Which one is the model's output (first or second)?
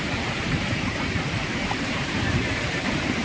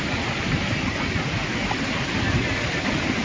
first